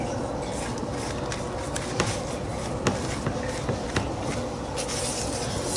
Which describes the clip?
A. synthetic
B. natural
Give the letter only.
B